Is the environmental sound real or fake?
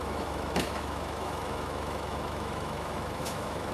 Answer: fake